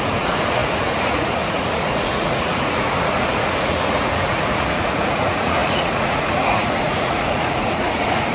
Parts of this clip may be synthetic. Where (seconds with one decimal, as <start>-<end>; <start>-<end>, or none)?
0.0-8.3